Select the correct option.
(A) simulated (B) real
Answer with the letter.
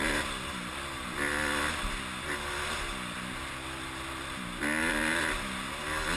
B